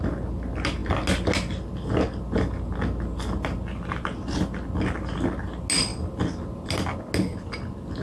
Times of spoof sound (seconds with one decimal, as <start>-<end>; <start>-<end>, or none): none